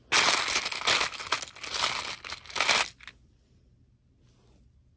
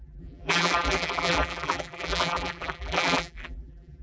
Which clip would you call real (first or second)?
first